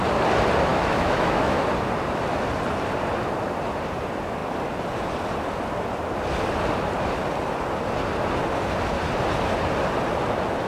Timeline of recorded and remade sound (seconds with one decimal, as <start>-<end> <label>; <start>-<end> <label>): 0.0-0.7 recorded; 0.7-1.6 remade; 1.6-10.7 recorded